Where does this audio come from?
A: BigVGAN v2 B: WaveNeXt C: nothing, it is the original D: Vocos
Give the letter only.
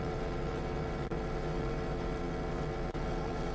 B